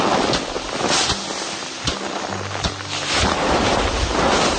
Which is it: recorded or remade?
recorded